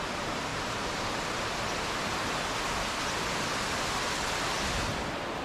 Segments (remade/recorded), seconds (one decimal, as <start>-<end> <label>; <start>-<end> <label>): 0.0-0.5 recorded; 0.5-1.1 remade; 1.1-5.4 recorded